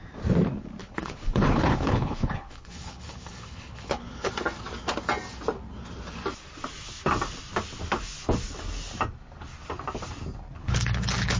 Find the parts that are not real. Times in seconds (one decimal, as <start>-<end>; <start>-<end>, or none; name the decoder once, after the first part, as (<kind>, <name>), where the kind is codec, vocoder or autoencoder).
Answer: 0.8-4.3 (codec, HILCodec); 10.6-11.4